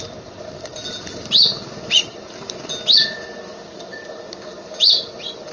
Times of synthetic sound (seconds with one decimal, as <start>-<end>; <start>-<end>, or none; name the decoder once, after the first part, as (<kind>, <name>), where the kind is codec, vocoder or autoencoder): none